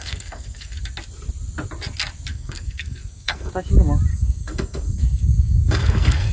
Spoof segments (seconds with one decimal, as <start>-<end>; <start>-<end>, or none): 0.0-0.8; 2.3-3.5; 4.1-6.3